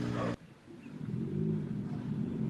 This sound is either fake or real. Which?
real